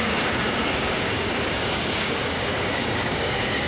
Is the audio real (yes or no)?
no